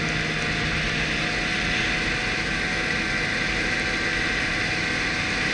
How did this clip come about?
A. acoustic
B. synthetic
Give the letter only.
A